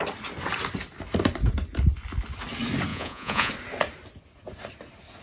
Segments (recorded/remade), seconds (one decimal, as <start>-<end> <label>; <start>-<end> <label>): 0.0-2.9 recorded; 2.9-3.5 remade; 3.5-5.2 recorded